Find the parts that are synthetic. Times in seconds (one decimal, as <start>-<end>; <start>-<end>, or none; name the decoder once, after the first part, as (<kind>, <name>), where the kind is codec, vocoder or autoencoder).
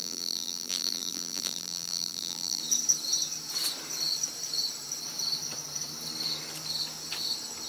0.0-2.6 (vocoder, BigVGAN v2)